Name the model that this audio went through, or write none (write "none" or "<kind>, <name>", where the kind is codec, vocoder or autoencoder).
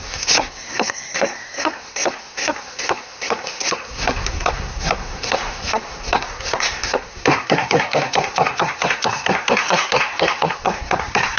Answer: codec, SNAC